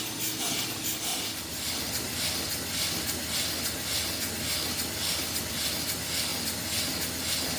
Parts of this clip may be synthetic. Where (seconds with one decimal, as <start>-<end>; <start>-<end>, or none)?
none